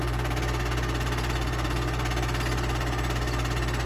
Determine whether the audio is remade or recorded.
recorded